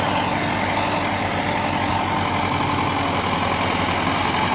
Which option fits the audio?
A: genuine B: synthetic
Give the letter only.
A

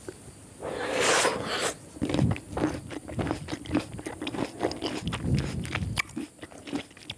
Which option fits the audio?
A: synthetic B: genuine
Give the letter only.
B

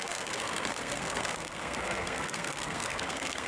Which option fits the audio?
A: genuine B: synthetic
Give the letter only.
B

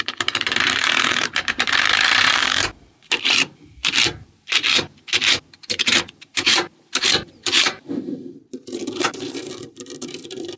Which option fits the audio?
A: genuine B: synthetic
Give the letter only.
B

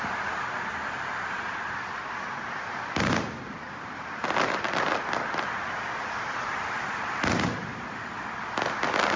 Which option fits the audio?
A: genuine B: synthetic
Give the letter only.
A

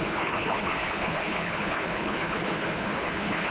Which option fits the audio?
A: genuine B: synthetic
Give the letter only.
B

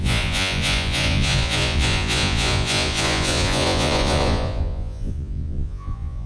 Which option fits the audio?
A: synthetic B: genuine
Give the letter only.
A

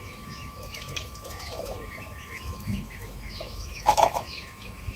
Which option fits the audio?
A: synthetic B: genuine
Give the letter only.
A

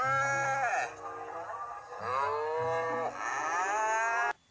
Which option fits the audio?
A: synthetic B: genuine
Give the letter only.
B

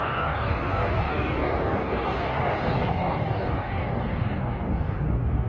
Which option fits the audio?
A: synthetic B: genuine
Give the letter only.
A